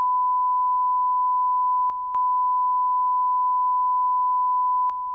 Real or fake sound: real